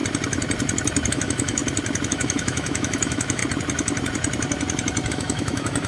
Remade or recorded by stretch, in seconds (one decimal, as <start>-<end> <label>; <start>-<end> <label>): 0.0-1.1 recorded; 1.1-1.6 remade; 1.6-2.1 recorded; 2.1-3.4 remade; 3.4-5.1 recorded; 5.1-5.9 remade